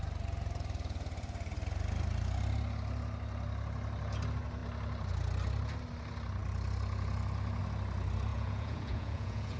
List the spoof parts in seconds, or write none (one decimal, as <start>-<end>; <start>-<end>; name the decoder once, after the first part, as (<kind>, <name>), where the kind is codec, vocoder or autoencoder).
8.3-9.6 (vocoder, Vocos)